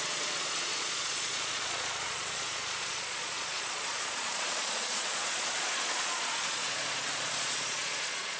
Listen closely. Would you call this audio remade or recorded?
remade